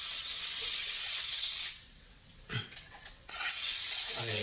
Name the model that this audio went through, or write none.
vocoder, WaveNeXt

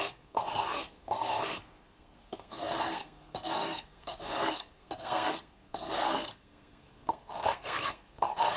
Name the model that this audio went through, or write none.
codec, SNAC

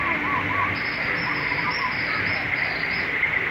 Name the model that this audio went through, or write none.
none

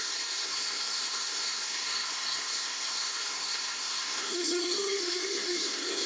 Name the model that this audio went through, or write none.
codec, SNAC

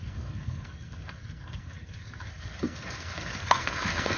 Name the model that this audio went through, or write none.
codec, SNAC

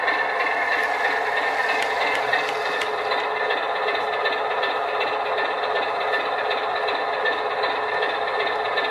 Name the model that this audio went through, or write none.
none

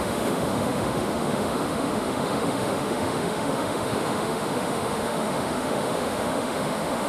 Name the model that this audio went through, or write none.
autoencoder, DAC-VAE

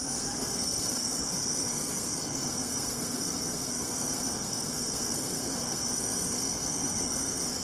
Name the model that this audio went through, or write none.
codec, SNAC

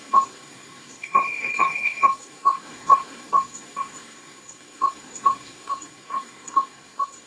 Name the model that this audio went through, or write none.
codec, SNAC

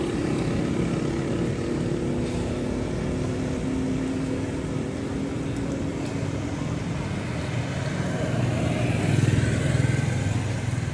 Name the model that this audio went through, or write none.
none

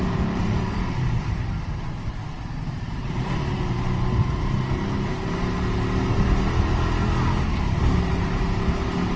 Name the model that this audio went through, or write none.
none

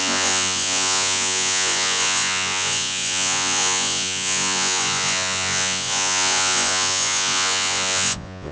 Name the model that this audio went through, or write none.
vocoder, Vocos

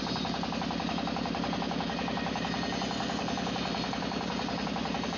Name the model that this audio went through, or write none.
none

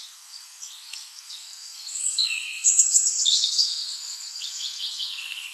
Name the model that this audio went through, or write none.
codec, SNAC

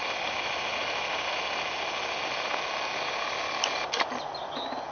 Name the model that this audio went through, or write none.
none